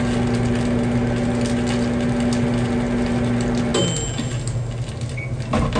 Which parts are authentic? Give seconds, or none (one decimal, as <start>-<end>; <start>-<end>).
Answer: 0.0-5.8